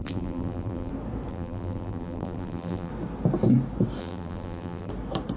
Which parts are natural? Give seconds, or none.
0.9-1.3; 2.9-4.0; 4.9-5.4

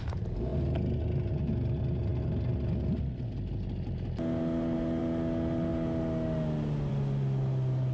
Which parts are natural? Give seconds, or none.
0.0-7.9

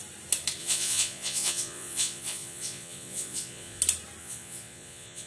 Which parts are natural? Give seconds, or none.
0.0-0.6; 3.8-4.2